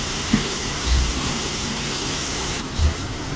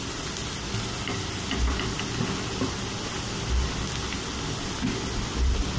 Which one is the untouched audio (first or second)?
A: second